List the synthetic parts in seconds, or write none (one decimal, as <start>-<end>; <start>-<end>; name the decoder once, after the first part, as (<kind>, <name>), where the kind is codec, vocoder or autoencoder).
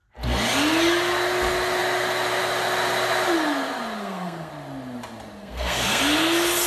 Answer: 4.0-4.5 (codec, SNAC); 5.4-6.0